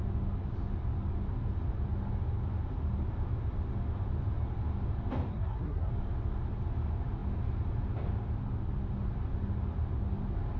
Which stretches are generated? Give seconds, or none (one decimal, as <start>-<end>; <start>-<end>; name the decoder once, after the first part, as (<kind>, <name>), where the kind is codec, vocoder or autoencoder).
5.3-5.9 (codec, SNAC)